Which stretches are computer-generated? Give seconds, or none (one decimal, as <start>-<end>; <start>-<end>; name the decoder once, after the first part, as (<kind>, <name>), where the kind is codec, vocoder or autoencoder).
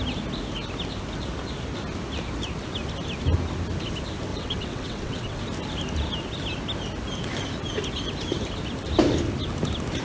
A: 4.3-5.4 (vocoder, WaveNeXt)